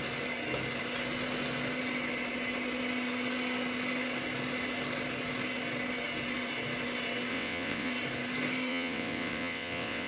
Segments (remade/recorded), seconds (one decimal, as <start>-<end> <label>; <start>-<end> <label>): 0.0-7.3 recorded; 7.3-7.9 remade; 7.9-8.7 recorded; 8.7-10.1 remade